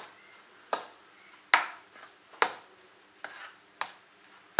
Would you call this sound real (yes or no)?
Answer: yes